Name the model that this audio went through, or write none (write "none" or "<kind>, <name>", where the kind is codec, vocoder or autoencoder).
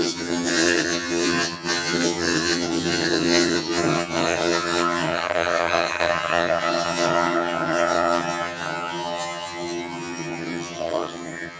vocoder, HiFi-GAN